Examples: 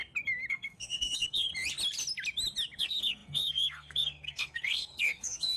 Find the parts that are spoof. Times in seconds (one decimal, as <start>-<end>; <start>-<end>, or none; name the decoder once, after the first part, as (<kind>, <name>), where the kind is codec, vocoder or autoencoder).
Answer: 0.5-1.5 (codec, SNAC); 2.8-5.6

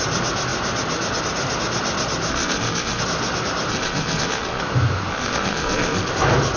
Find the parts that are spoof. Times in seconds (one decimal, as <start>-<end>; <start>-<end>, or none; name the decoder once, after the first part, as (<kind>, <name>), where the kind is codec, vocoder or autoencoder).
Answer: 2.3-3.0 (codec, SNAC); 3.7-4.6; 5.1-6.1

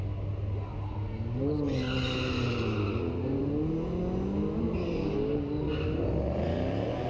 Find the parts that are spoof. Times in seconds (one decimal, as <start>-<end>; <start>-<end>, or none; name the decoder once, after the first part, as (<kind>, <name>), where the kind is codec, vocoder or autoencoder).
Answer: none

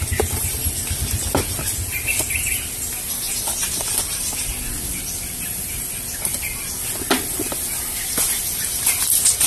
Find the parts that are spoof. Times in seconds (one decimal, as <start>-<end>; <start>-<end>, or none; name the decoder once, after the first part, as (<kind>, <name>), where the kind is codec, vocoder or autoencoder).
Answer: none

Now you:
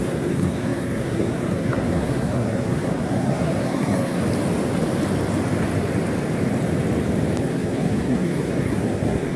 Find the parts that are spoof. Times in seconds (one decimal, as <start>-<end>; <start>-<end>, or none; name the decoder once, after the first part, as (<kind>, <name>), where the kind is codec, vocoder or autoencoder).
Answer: 0.0-4.2 (codec, SNAC); 7.4-9.4

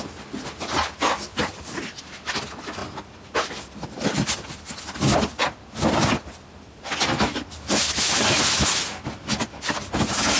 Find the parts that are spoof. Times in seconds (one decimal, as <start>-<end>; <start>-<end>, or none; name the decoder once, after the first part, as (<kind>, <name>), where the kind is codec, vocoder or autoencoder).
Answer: none